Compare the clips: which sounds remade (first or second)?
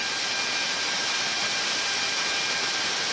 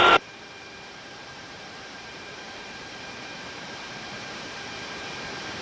second